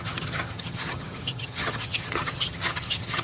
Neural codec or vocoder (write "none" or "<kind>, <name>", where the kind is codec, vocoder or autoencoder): vocoder, HiFi-GAN